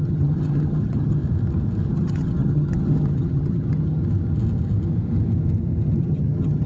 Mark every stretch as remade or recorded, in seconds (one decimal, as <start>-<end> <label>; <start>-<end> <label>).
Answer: 0.0-1.2 remade; 1.2-1.9 recorded; 1.9-4.0 remade; 4.0-6.0 recorded; 6.0-6.7 remade